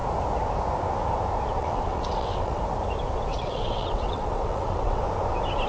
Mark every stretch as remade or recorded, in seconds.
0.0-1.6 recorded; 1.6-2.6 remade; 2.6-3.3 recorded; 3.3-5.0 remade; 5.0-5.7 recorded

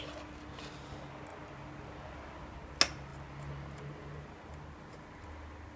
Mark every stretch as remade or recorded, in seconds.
0.0-5.8 recorded

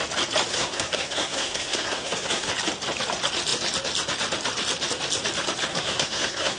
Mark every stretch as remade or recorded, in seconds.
0.0-0.5 recorded; 0.5-2.5 remade; 2.5-5.7 recorded; 5.7-6.6 remade

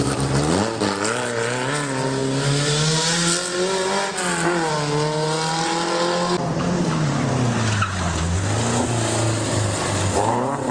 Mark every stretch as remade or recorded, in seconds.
0.0-10.7 recorded